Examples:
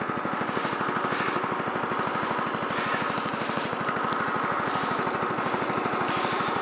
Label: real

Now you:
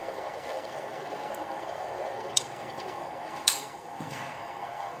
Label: fake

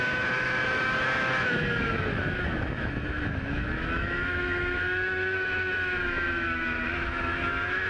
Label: fake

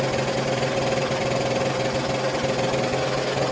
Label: real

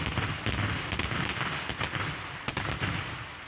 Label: real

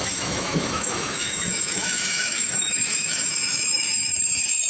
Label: fake